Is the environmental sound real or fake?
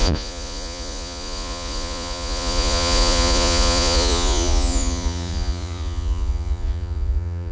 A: fake